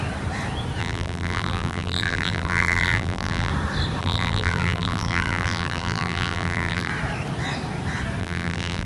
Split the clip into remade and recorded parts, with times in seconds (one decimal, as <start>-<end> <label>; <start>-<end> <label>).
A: 0.0-0.8 recorded; 0.8-3.5 remade; 3.5-4.0 recorded; 4.0-6.9 remade; 6.9-8.2 recorded; 8.2-8.9 remade